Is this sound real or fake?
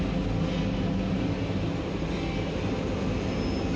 real